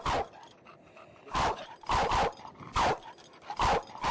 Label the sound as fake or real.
real